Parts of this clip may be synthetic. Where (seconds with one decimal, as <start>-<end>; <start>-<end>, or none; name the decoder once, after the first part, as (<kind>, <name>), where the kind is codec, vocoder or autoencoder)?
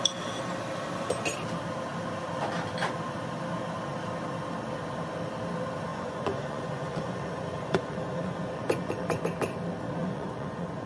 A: 5.9-9.2 (vocoder, Vocos); 10.0-10.9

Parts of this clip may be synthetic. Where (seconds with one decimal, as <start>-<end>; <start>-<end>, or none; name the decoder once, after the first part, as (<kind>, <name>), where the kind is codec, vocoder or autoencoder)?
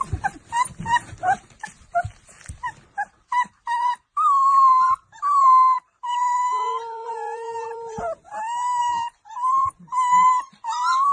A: 0.0-11.1 (vocoder, BigVGAN v2)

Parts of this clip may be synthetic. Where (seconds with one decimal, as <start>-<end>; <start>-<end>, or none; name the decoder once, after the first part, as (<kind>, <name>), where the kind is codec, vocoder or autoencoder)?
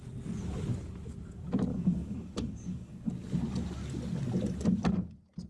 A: 1.7-3.1 (codec, DAC)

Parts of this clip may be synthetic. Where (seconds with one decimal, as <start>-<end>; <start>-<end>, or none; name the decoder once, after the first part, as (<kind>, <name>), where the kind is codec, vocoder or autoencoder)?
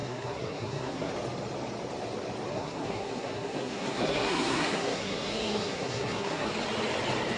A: 0.0-1.1 (codec, SNAC); 2.5-6.5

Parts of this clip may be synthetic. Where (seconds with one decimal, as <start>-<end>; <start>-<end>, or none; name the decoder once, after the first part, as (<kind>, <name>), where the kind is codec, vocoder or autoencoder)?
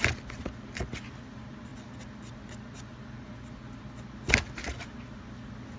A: none